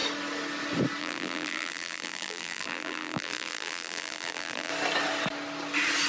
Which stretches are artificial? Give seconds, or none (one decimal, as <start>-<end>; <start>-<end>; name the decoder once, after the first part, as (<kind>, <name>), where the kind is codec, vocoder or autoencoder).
1.0-4.7 (vocoder, BigVGAN v2)